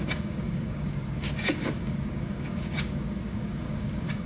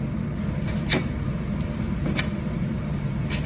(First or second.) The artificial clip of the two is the first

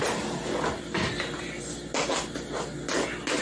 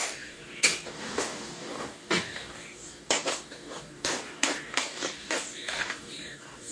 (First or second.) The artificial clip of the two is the second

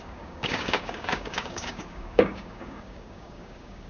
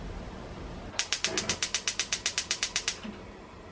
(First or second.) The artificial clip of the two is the first